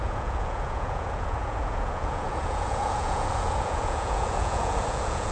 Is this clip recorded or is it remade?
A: remade